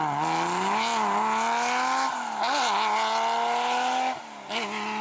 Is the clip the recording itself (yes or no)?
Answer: yes